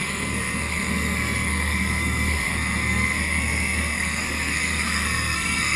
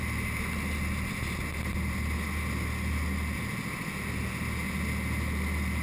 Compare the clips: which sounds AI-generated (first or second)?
first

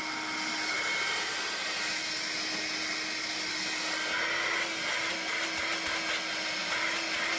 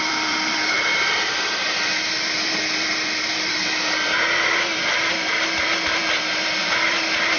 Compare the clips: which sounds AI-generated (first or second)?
second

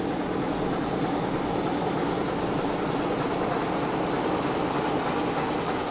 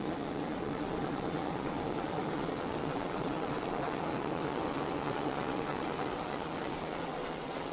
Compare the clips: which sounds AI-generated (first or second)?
second